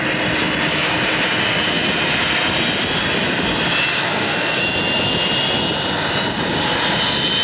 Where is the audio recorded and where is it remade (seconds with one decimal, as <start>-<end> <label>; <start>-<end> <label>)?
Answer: 0.0-3.9 recorded; 3.9-4.6 remade; 4.6-7.4 recorded

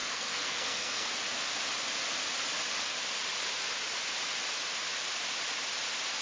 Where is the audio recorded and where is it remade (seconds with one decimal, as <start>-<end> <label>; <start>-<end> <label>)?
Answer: 0.0-1.1 remade; 1.1-6.2 recorded